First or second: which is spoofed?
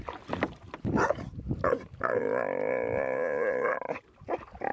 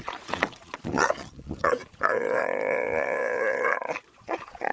second